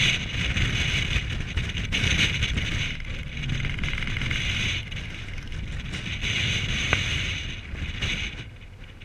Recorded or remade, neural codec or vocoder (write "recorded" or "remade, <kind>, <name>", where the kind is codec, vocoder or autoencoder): recorded